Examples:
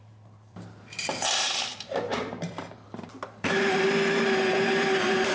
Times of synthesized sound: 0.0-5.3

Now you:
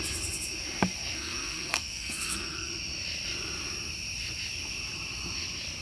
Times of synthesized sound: 1.1-2.7

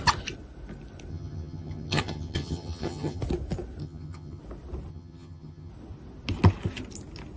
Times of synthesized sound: 1.1-3.2; 3.8-4.4; 4.9-5.7

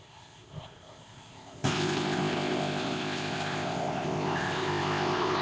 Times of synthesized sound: 0.0-5.4

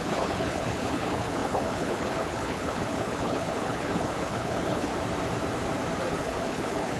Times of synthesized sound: 0.0-4.9; 6.1-7.0